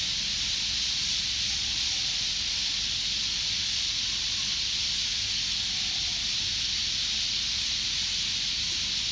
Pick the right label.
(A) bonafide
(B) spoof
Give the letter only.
A